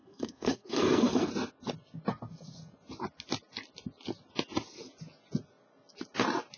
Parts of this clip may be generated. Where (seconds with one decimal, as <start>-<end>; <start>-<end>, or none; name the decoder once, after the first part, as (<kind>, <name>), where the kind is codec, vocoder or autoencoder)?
0.0-1.3 (codec, SNAC)